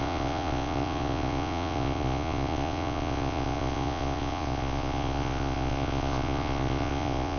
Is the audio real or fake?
fake